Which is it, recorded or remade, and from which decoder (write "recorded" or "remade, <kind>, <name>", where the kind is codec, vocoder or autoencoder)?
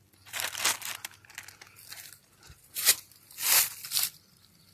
recorded